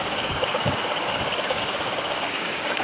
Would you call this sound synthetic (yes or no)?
yes